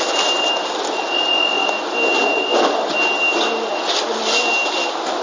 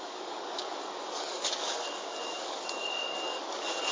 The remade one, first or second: second